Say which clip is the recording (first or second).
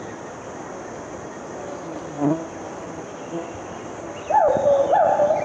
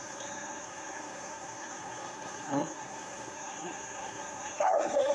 first